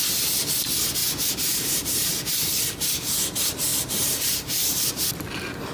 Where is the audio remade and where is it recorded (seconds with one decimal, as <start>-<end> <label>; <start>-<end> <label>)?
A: 0.0-1.0 recorded; 1.0-3.1 remade; 3.1-3.7 recorded; 3.7-4.8 remade; 4.8-5.7 recorded